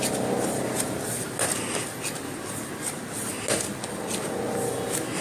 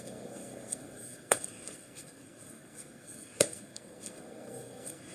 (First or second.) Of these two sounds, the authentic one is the first